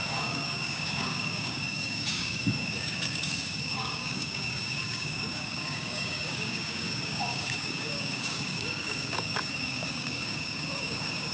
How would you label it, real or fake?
fake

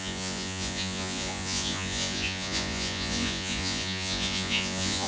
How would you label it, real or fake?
fake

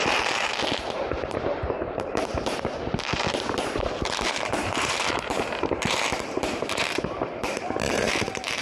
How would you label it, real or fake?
fake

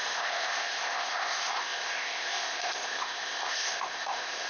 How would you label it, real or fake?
fake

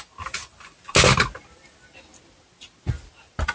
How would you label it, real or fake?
real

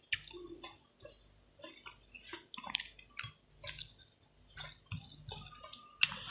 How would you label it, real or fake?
real